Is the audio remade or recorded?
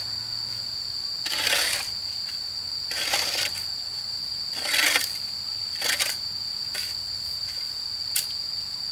recorded